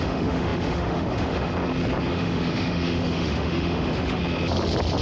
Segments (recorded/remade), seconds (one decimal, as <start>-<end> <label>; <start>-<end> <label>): 0.0-1.5 remade; 1.5-2.1 recorded; 2.1-4.2 remade; 4.2-5.0 recorded